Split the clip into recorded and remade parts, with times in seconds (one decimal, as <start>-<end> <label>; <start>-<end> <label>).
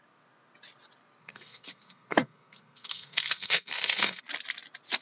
0.0-1.2 recorded; 1.2-4.2 remade; 4.2-5.0 recorded